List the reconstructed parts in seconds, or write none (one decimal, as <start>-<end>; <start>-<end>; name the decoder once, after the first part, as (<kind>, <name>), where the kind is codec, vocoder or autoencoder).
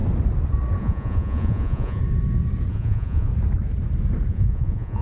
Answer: 0.8-2.0 (vocoder, Vocos); 2.7-3.3; 4.3-5.0